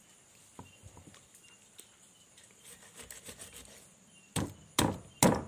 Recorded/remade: recorded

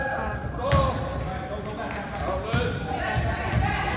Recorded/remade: recorded